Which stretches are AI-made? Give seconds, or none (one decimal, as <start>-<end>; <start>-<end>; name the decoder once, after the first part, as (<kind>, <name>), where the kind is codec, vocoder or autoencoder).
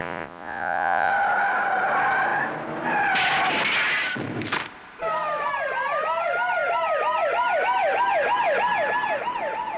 0.0-1.1 (vocoder, Vocos)